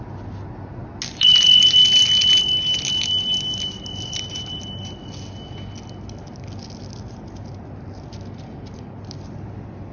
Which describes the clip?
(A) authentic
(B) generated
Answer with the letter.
A